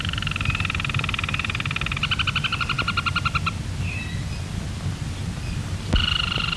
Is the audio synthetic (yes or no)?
no